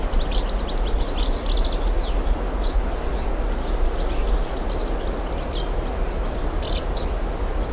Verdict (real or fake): real